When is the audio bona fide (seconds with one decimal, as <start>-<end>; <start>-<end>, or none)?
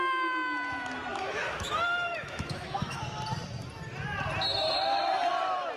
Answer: 0.0-1.1; 3.0-5.8